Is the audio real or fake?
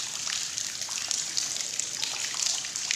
real